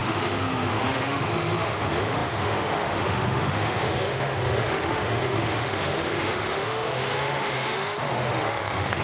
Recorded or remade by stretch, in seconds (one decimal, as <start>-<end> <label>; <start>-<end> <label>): 0.0-9.0 remade